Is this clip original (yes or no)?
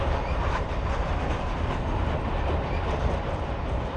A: yes